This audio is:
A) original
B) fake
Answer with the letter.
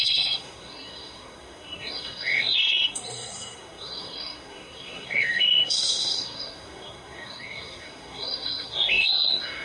B